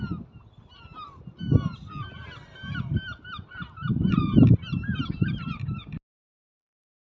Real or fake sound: real